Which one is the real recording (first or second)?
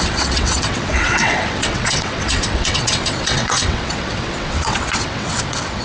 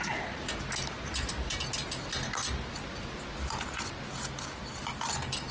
second